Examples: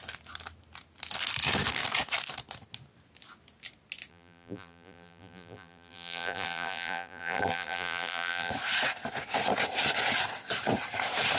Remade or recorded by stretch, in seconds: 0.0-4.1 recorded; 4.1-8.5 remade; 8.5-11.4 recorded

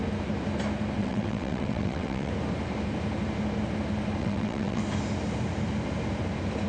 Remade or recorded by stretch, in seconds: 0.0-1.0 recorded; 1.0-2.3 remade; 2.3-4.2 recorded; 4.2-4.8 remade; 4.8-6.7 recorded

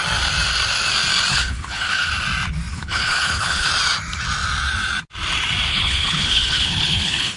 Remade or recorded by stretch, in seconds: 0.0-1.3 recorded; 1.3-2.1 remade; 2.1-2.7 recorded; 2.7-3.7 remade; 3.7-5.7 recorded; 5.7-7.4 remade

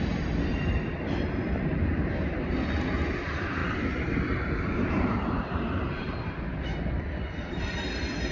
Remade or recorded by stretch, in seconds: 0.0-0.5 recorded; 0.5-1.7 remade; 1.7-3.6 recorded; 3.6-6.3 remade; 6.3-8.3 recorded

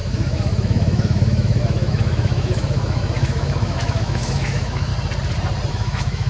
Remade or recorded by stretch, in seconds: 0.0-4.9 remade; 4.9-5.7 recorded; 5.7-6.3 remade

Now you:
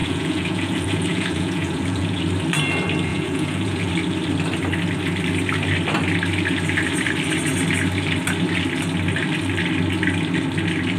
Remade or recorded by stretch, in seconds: 0.0-2.2 remade; 2.2-3.1 recorded; 3.1-3.9 remade; 3.9-11.0 recorded

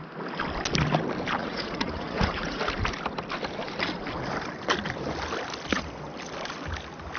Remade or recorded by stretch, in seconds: 0.0-1.4 recorded; 1.4-2.6 remade; 2.6-7.2 recorded

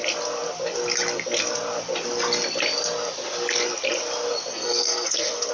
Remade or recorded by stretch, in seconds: 0.0-4.5 recorded; 4.5-5.5 remade